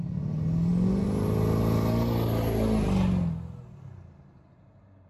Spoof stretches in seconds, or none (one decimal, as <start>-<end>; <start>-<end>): none